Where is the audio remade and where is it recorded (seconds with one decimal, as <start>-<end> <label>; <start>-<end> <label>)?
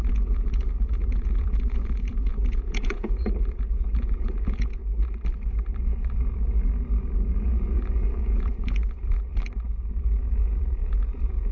0.0-4.8 remade; 4.8-7.3 recorded; 7.3-9.3 remade; 9.3-9.9 recorded; 9.9-11.5 remade